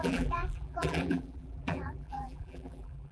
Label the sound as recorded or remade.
remade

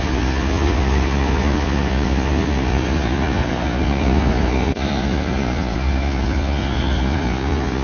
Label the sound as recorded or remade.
remade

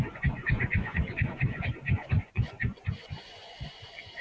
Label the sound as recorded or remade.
remade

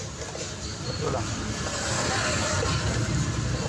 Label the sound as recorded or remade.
recorded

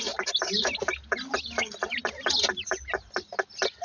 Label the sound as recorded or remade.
recorded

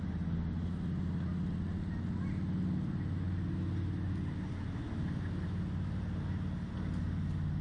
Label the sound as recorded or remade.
recorded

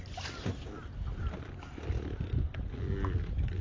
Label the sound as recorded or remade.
recorded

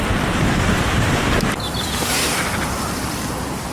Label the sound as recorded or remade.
remade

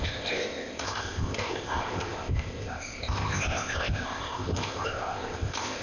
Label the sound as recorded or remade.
remade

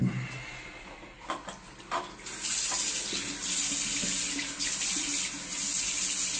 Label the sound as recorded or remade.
recorded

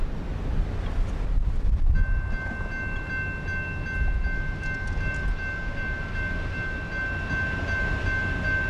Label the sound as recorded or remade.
recorded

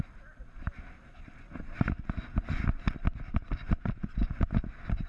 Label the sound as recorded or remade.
recorded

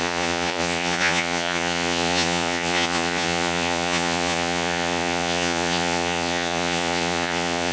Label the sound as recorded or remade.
remade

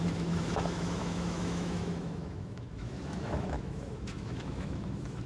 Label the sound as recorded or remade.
remade